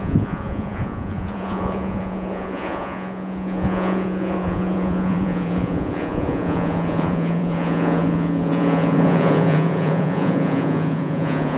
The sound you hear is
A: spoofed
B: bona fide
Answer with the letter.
A